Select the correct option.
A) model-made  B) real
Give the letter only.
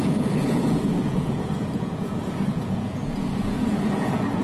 A